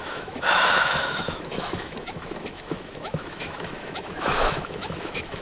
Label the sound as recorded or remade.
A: remade